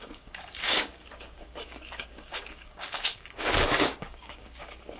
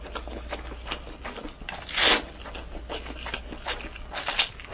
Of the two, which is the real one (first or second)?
second